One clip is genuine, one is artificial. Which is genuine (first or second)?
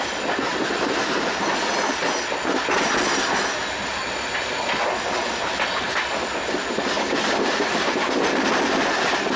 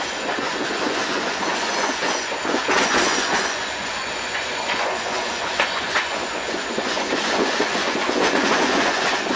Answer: first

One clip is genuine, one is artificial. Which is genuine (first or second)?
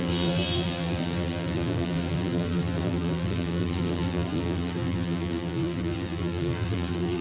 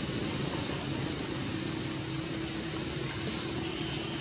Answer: second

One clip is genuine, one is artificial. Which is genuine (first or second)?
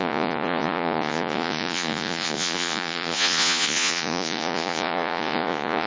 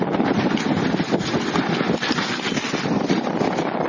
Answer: second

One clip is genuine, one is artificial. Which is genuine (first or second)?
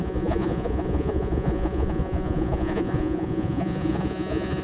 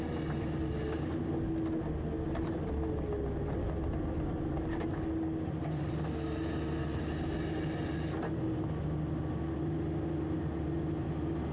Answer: second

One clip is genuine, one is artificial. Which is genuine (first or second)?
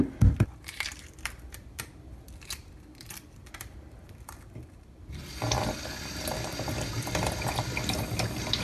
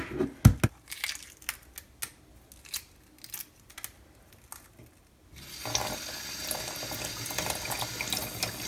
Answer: second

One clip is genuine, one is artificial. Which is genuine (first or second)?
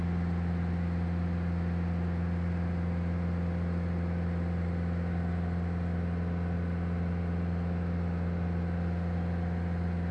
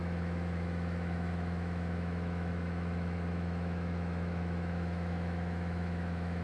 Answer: first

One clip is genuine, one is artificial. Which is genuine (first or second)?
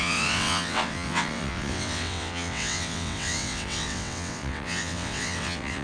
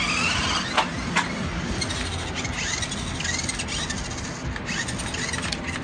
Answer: second